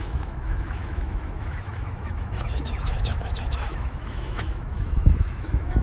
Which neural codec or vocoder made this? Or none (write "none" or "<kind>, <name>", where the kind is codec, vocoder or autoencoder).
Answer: autoencoder, DAC-VAE